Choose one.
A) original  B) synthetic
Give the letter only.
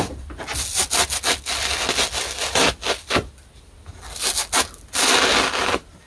A